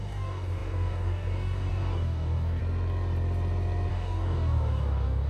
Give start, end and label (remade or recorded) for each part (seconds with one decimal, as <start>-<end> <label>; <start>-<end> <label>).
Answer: 0.0-2.6 remade; 2.6-3.9 recorded; 3.9-5.3 remade